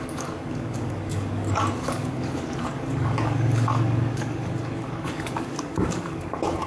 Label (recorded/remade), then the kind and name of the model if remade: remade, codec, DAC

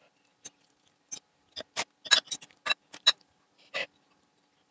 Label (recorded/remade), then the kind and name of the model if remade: recorded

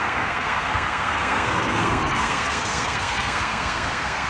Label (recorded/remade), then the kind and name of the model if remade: remade, codec, SNAC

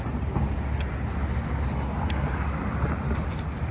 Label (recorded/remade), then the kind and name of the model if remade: recorded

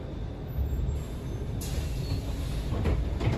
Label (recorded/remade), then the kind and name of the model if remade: recorded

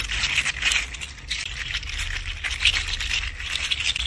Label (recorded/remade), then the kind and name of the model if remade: recorded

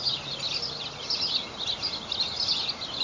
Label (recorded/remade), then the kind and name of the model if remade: recorded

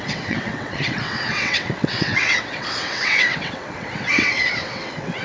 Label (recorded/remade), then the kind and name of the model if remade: remade, vocoder, WaveNeXt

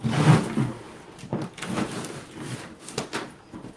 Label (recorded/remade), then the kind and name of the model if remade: recorded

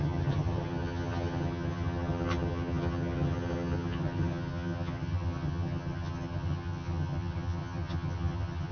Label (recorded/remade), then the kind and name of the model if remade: remade, vocoder, HiFi-GAN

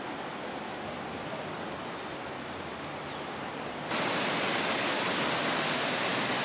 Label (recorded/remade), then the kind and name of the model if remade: recorded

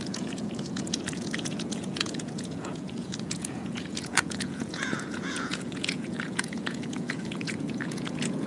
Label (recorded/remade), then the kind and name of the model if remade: remade, vocoder, Vocos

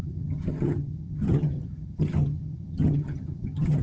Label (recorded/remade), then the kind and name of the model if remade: remade, vocoder, HiFi-GAN